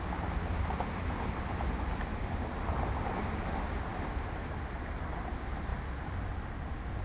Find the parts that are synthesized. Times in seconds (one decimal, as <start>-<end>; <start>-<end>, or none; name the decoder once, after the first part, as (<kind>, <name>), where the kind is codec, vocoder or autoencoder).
none